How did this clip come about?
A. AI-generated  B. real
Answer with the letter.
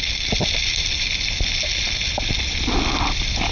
B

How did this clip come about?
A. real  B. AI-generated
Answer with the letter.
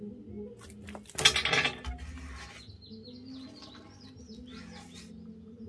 A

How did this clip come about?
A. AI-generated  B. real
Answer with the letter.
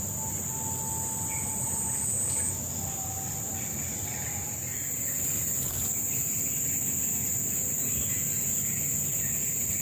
B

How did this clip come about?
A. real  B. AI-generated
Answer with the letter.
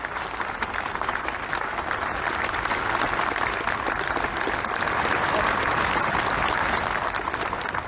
A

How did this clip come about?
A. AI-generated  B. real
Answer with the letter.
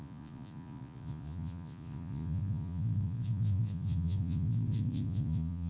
A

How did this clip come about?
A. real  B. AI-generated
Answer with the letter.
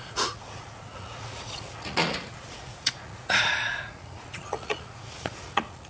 B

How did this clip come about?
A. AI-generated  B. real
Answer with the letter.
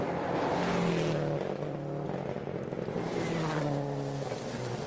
B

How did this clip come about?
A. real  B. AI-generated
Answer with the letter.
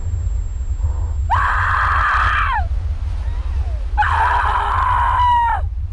A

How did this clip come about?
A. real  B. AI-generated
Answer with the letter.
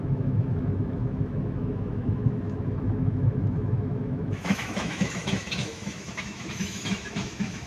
B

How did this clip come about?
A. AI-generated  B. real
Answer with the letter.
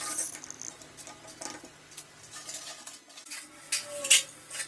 B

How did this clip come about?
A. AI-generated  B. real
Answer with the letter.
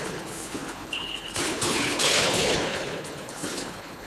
A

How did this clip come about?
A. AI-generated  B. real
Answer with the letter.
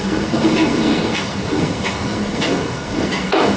A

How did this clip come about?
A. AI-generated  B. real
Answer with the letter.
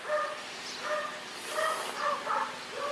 B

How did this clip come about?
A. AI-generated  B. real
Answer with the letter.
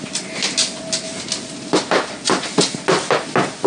B